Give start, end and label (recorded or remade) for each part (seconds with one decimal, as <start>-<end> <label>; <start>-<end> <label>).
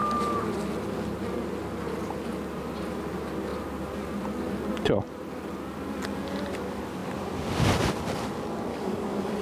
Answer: 0.0-8.7 recorded; 8.7-9.4 remade